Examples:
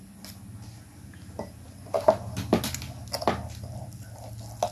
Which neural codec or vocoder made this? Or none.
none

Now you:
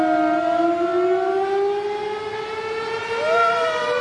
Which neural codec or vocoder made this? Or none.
none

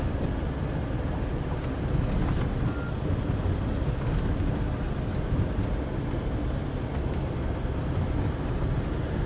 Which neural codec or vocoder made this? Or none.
none